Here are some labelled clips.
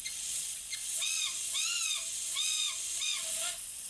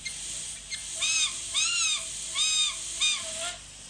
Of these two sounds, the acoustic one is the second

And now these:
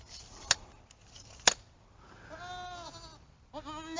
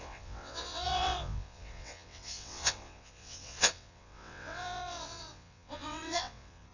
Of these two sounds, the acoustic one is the first